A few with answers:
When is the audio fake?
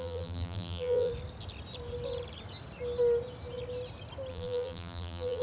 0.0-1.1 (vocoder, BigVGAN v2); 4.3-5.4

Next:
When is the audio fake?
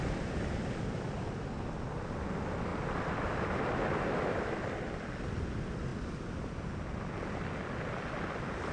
none